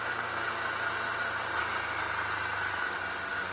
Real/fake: real